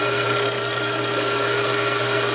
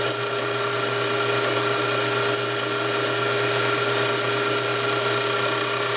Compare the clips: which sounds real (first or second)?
second